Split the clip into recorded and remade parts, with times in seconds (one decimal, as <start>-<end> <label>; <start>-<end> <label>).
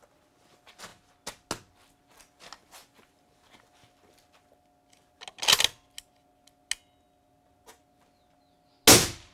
0.0-9.3 recorded